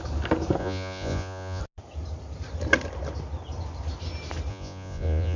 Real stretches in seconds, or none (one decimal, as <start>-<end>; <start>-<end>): 0.0-0.6; 1.6-4.5